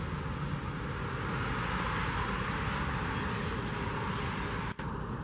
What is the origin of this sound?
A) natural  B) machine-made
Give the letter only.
A